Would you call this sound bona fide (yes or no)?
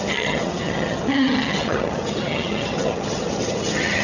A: no